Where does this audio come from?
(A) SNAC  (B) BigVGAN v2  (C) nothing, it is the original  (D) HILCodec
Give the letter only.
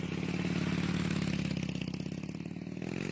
C